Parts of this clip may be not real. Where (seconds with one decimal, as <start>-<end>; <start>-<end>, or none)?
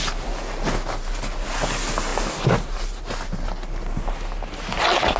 none